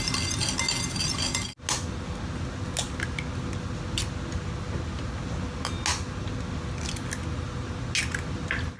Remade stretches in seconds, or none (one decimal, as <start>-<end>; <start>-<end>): none